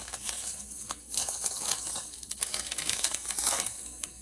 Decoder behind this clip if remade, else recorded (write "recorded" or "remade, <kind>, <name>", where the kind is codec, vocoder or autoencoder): remade, codec, SNAC